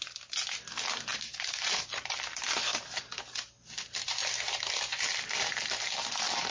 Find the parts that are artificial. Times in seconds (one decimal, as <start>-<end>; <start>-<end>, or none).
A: 1.1-1.9